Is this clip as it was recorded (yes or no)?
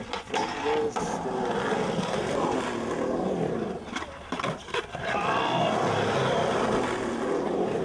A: yes